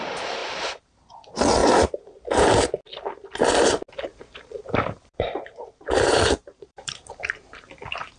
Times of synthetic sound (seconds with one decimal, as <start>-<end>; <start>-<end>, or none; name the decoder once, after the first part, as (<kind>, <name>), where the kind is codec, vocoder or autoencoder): 0.4-1.1 (vocoder, BigVGAN v2); 1.6-2.6; 4.1-7.7